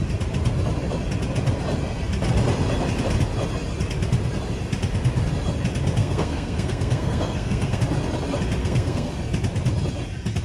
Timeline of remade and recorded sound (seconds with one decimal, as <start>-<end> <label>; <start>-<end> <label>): 0.0-6.0 recorded; 6.0-7.8 remade; 7.8-8.6 recorded; 8.6-9.1 remade; 9.1-10.4 recorded